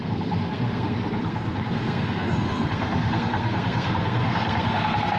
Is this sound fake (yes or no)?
yes